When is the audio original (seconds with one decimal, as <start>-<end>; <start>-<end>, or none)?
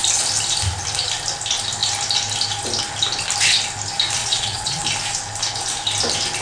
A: 0.0-4.2; 4.8-6.4